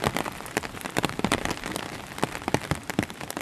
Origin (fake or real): real